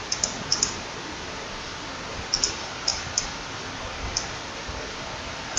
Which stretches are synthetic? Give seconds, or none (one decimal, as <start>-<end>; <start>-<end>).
none